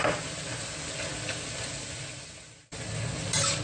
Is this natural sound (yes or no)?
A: yes